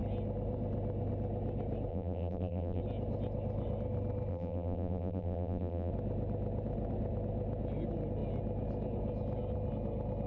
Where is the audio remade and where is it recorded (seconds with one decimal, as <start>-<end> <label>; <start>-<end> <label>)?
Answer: 0.0-1.9 recorded; 1.9-2.8 remade; 2.8-4.3 recorded; 4.3-5.9 remade; 5.9-10.3 recorded

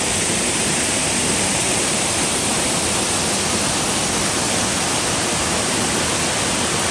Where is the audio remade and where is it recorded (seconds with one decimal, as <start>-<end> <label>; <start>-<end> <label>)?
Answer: 0.0-2.5 remade; 2.5-6.9 recorded

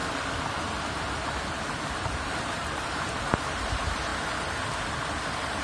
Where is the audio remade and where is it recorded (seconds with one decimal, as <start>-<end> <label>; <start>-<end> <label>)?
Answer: 0.0-2.4 recorded; 2.4-4.1 remade; 4.1-5.6 recorded

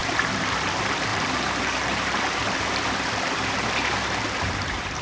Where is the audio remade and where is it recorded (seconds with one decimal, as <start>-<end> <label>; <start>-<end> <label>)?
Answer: 0.0-1.1 recorded; 1.1-2.5 remade; 2.5-5.0 recorded